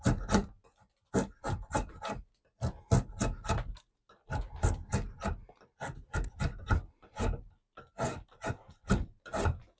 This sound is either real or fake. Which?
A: real